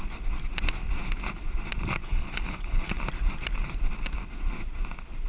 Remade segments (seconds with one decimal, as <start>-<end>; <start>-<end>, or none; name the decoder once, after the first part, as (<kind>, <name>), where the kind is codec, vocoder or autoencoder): 2.0-2.9 (codec, HILCodec)